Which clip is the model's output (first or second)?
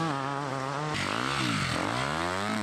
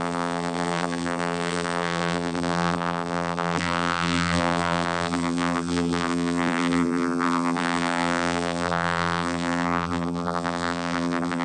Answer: second